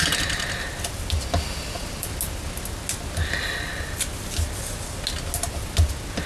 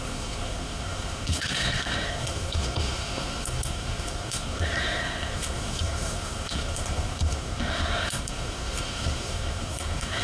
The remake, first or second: second